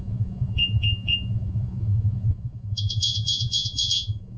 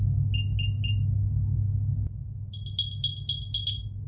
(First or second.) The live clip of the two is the second